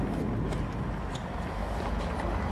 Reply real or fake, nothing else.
real